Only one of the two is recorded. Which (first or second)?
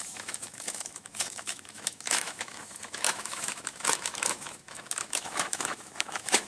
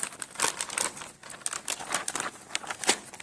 second